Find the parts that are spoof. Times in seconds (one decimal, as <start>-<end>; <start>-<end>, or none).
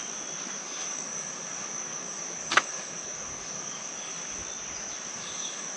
0.6-4.1; 5.1-5.8